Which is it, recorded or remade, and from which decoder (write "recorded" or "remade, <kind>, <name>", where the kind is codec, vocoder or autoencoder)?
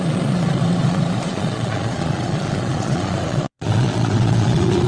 remade, vocoder, Vocos